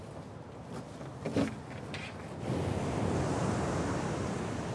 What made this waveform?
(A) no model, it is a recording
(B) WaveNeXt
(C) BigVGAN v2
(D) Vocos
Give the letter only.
A